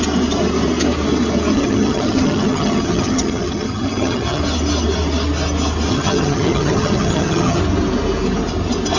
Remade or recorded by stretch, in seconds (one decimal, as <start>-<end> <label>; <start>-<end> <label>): 0.0-1.5 recorded; 1.5-4.4 remade; 4.4-5.9 recorded; 5.9-7.6 remade; 7.6-9.0 recorded